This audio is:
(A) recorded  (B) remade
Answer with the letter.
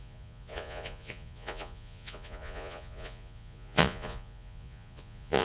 B